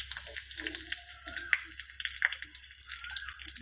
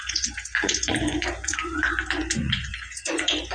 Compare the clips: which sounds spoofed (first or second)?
second